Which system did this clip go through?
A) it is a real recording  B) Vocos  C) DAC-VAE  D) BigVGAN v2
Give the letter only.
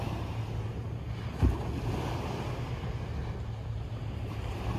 A